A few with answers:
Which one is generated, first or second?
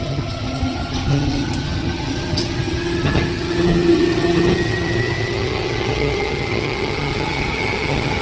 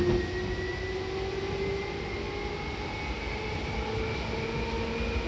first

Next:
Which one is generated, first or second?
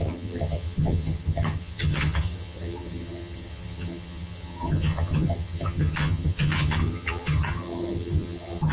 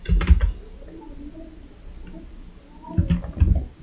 first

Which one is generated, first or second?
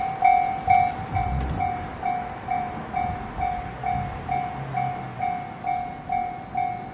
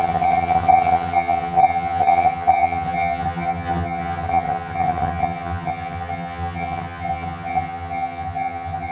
second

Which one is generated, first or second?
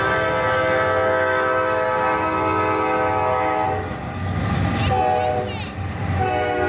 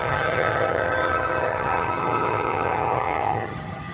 second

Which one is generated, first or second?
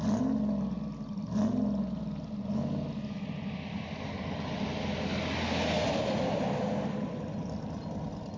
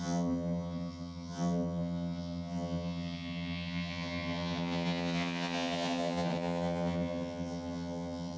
second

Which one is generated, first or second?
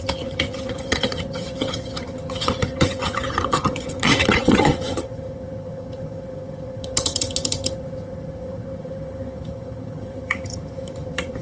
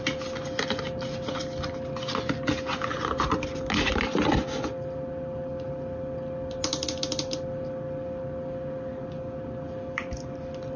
first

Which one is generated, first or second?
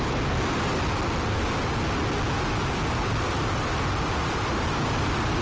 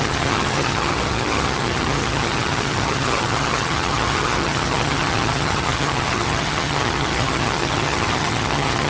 second